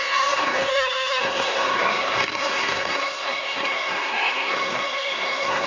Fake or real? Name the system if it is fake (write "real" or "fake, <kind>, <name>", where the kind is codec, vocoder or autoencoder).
fake, codec, SNAC